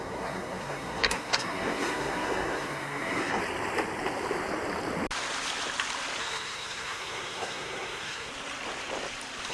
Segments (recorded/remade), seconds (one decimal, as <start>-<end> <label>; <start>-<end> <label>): 0.0-3.4 remade; 3.4-6.2 recorded; 6.2-8.3 remade; 8.3-9.5 recorded